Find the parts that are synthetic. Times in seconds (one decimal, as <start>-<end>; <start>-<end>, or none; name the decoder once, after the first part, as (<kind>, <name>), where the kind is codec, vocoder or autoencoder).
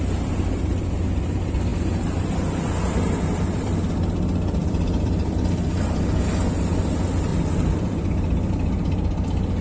1.7-3.8 (vocoder, BigVGAN v2); 4.6-6.4; 7.3-8.5